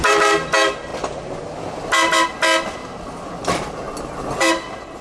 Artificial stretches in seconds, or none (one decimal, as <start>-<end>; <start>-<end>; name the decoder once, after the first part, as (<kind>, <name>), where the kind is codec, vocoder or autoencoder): 0.0-0.9 (vocoder, BigVGAN v2); 3.3-3.8; 4.4-5.0